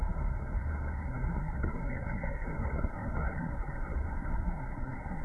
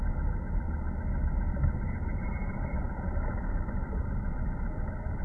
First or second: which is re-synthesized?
first